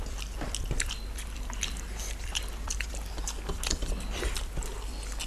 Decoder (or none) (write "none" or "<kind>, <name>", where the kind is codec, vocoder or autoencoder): none